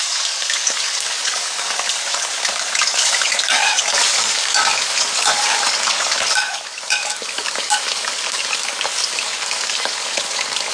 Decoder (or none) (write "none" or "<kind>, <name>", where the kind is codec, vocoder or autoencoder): codec, DAC